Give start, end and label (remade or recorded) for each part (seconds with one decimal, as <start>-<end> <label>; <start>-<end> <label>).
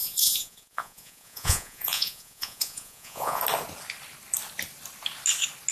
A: 0.0-3.4 remade; 3.4-5.7 recorded